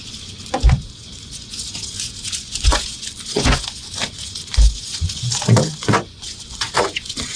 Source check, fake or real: fake